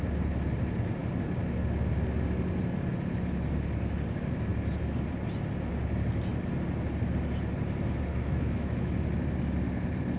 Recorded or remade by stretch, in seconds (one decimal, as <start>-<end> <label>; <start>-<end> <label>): 0.0-8.1 recorded; 8.1-8.9 remade; 8.9-10.2 recorded